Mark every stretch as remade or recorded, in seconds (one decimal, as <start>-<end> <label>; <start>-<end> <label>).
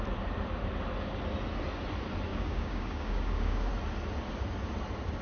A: 0.0-2.3 recorded; 2.3-3.7 remade; 3.7-5.2 recorded